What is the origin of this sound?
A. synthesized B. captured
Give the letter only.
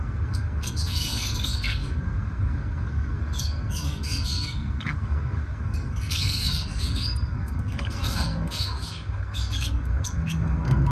A